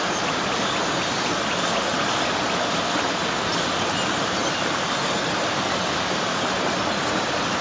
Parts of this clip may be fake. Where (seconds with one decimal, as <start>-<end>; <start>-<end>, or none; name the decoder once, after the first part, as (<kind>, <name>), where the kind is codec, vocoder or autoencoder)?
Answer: none